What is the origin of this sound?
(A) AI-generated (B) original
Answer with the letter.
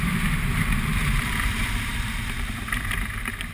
A